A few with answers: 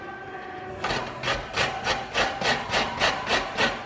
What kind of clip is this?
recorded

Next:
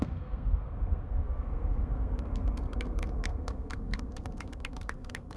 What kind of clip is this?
remade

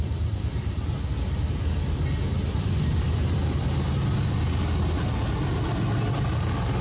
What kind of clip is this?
recorded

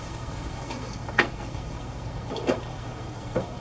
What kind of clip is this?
remade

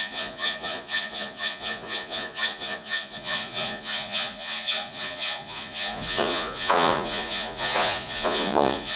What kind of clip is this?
remade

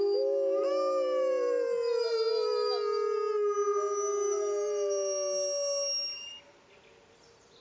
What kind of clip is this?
recorded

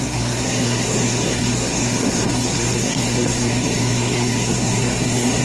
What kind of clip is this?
remade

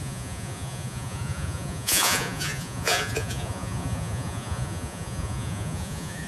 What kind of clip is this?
remade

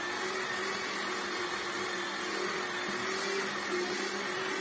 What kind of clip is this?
recorded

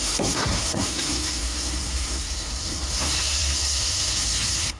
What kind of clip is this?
remade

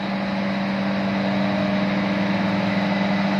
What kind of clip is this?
recorded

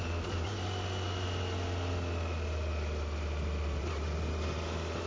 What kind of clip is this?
recorded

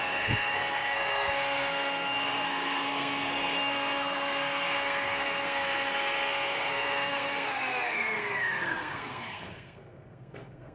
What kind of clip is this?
remade